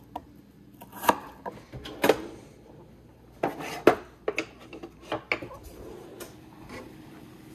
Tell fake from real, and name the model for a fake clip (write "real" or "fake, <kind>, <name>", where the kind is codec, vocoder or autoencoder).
real